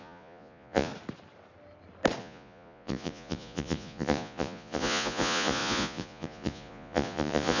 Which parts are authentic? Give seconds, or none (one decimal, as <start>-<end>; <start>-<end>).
0.9-2.2